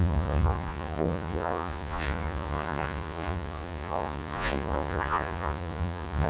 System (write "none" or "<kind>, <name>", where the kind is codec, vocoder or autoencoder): vocoder, Vocos